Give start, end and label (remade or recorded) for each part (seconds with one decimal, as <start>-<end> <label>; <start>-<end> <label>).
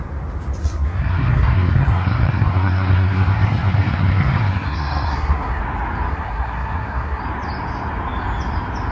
0.0-0.6 recorded; 0.6-5.6 remade; 5.6-6.1 recorded; 6.1-7.2 remade; 7.2-8.9 recorded